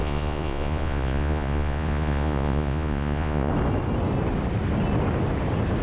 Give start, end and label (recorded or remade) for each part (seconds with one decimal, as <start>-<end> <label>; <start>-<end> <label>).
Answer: 0.0-3.5 remade; 3.5-5.8 recorded